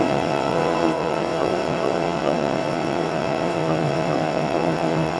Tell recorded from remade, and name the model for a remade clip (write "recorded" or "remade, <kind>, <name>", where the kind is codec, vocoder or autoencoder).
remade, vocoder, WaveNeXt